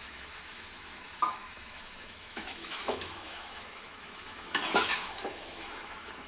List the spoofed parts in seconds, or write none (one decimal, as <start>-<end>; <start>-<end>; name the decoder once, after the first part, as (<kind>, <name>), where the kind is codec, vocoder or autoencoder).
0.0-6.3 (autoencoder, DAC-VAE)